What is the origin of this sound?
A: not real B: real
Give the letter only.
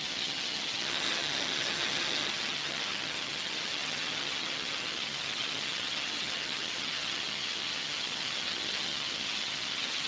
A